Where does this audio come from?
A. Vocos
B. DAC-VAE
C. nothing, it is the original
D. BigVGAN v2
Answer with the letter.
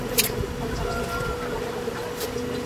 C